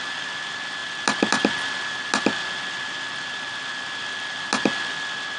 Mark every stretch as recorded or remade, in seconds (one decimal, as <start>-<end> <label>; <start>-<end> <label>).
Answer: 0.0-5.4 recorded